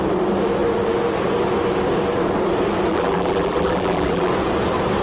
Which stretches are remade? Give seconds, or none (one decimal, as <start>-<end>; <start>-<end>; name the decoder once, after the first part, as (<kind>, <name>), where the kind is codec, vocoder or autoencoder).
2.9-4.3 (vocoder, BigVGAN v2)